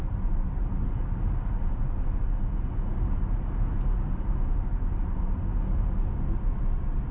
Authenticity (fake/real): real